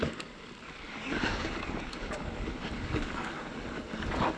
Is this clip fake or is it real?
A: fake